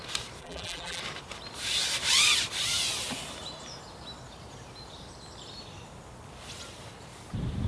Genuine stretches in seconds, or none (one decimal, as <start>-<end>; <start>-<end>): 0.0-0.4; 1.0-7.7